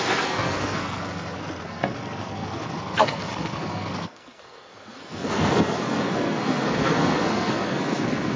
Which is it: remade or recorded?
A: remade